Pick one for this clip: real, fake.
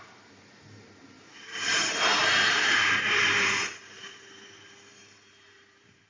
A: fake